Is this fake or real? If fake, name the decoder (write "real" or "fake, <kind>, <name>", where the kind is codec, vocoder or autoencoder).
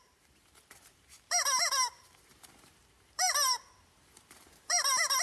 fake, vocoder, BigVGAN v2